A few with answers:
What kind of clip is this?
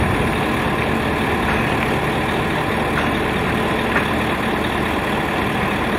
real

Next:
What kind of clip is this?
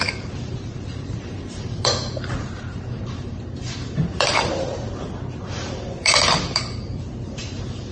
fake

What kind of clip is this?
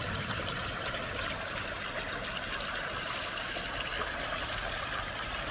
fake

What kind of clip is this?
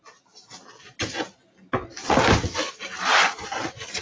real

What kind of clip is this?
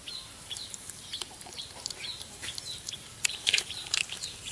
fake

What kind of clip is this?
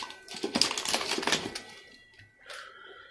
real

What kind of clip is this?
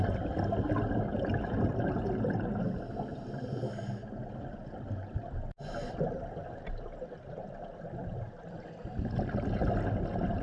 real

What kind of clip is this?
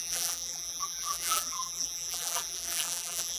fake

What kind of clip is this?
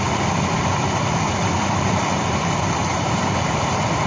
fake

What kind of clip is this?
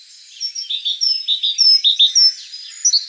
real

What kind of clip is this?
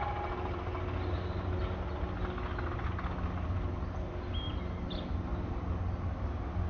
real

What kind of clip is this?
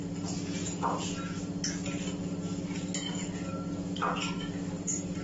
real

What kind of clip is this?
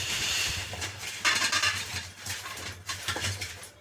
fake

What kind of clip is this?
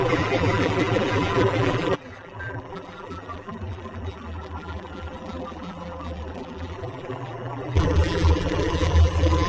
fake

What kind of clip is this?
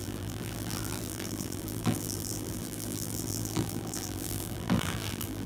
fake